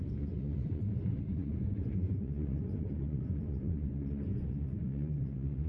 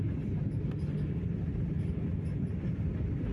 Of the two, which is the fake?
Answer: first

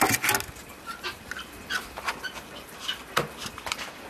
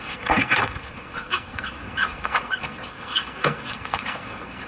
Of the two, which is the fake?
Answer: second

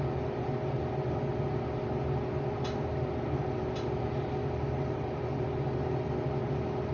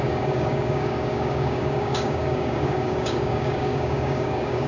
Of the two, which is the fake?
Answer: second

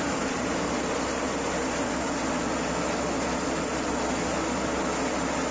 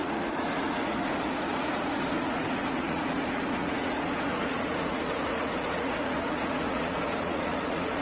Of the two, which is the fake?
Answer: second